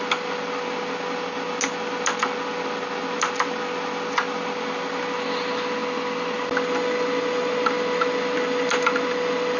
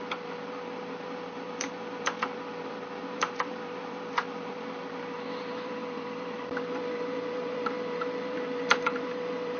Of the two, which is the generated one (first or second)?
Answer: second